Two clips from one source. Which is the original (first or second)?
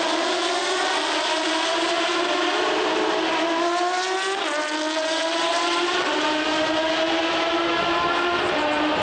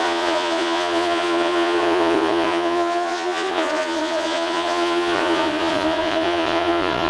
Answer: first